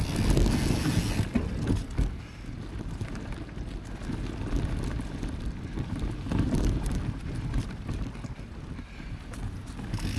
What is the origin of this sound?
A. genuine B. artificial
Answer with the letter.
A